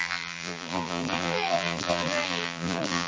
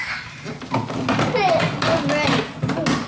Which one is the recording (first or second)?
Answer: second